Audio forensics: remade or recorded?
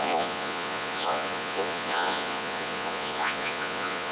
remade